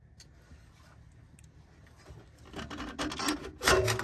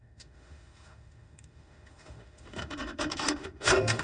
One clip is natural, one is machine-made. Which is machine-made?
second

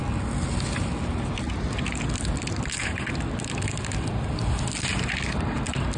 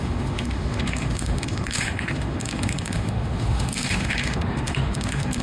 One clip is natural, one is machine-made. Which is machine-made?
second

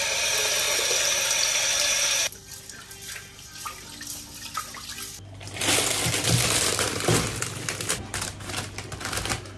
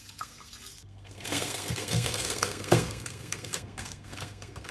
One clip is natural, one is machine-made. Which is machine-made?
second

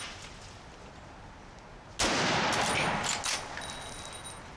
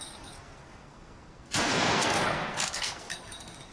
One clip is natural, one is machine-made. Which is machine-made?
second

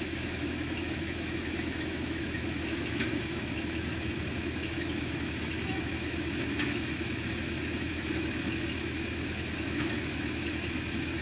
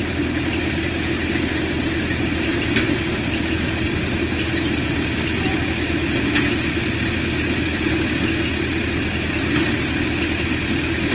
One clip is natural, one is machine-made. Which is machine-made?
first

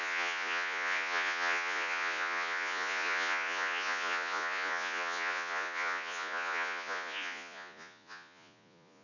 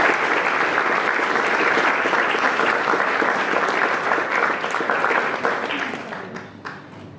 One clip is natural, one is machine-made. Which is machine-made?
first